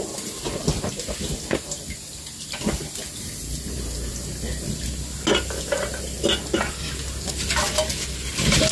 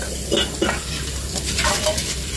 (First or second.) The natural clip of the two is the first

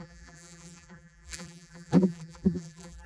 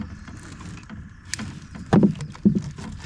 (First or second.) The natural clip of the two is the second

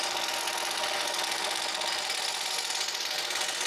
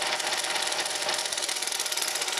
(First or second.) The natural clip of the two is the first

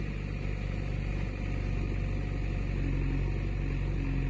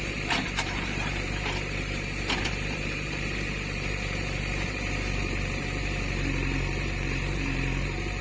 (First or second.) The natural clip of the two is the first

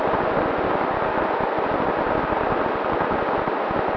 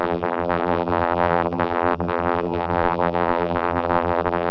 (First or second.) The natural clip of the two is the first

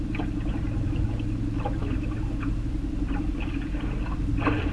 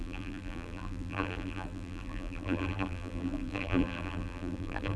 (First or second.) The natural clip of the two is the first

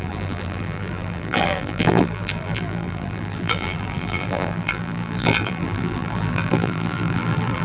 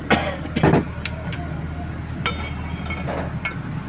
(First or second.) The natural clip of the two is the second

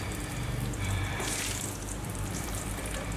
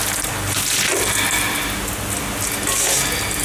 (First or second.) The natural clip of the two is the second